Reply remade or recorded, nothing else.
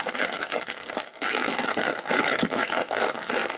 remade